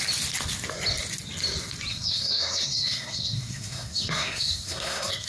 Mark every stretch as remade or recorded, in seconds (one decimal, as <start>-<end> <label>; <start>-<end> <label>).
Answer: 0.0-1.9 recorded; 1.9-5.3 remade